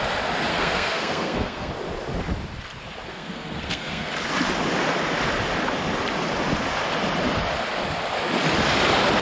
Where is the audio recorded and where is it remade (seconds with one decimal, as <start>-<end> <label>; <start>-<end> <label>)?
0.0-0.5 recorded; 0.5-1.7 remade; 1.7-3.1 recorded; 3.1-4.1 remade; 4.1-9.2 recorded